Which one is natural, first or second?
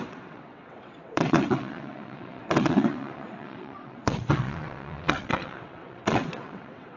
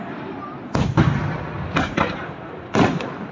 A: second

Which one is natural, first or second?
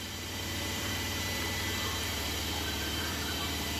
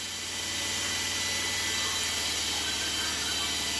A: second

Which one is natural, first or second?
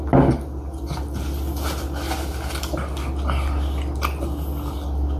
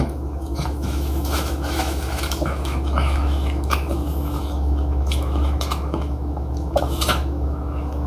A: first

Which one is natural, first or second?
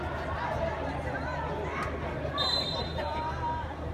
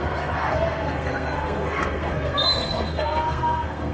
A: first